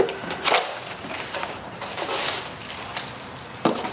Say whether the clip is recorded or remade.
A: recorded